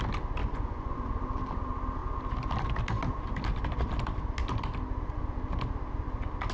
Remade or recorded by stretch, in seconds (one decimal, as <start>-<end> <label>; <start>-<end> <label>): 0.0-0.4 recorded; 0.4-1.1 remade; 1.1-6.5 recorded